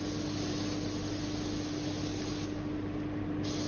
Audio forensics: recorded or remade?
recorded